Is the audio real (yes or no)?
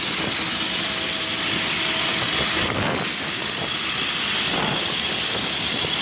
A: yes